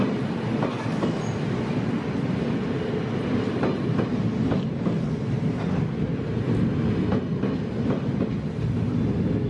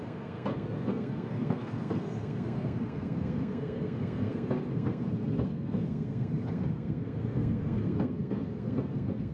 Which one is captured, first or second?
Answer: first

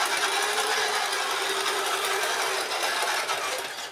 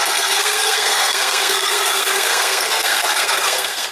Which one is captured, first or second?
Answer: first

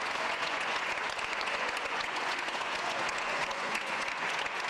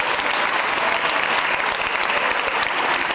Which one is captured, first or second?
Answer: second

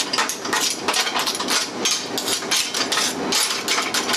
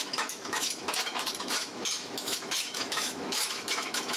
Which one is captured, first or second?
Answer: first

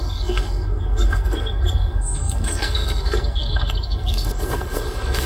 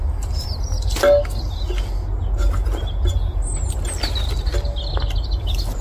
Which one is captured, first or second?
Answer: second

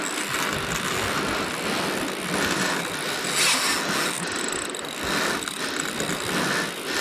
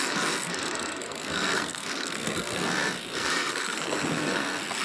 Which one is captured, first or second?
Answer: first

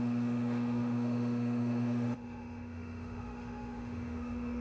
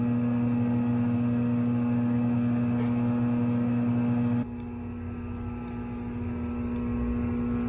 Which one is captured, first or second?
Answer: second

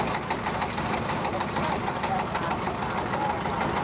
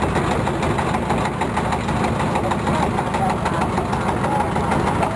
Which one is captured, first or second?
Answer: second